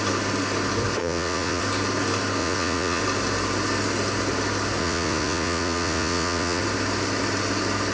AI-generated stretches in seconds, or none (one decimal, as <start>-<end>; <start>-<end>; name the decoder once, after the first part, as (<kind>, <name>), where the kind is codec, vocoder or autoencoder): 1.0-1.6 (vocoder, Vocos); 2.4-3.0; 4.8-6.6